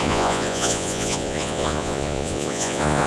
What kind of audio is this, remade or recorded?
remade